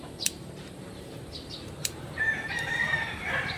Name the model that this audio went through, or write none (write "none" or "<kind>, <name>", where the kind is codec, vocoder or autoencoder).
vocoder, BigVGAN v2